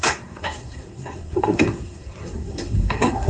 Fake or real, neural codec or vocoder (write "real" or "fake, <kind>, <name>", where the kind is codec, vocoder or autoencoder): fake, codec, SNAC